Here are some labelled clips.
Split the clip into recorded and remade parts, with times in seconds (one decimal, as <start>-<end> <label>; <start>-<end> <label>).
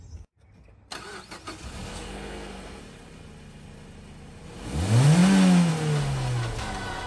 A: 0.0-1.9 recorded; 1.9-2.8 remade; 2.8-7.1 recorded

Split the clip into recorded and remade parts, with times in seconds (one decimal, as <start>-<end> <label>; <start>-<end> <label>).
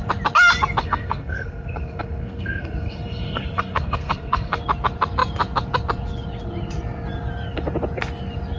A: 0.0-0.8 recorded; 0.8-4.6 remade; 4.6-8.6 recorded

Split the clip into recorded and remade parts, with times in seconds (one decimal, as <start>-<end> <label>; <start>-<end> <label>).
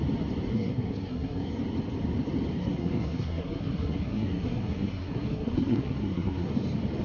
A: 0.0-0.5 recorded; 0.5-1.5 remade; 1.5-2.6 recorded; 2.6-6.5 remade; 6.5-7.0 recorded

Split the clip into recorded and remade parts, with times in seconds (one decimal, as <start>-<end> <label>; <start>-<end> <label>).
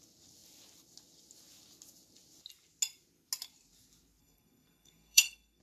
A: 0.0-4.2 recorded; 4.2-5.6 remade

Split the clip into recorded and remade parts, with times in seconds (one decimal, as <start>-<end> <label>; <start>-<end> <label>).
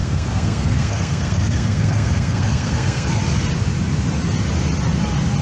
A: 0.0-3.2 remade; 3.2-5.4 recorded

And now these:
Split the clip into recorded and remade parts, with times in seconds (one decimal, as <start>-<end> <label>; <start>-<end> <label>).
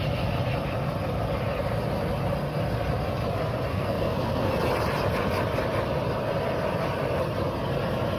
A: 0.0-3.7 recorded; 3.7-4.5 remade; 4.5-8.2 recorded